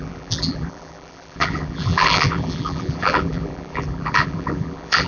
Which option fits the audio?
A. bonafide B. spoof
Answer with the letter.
B